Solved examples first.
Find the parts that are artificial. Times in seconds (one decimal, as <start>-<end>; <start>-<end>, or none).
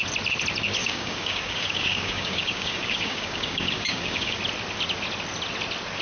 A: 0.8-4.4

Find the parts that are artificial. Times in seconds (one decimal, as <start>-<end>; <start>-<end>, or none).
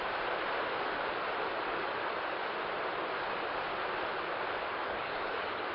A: 4.8-5.7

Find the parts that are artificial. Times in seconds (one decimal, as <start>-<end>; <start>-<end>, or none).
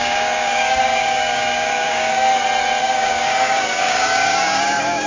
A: 0.0-2.3; 2.8-5.1